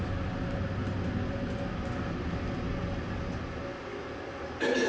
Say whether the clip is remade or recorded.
recorded